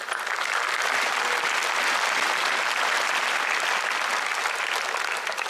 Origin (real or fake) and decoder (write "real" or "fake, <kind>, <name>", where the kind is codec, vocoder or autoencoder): real